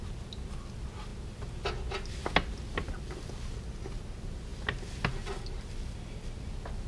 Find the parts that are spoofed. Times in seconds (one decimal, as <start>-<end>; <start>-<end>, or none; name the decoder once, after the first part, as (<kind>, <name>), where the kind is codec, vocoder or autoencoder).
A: none